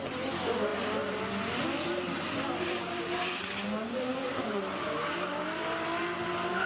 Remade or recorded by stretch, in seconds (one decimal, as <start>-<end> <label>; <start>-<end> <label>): 0.0-6.7 recorded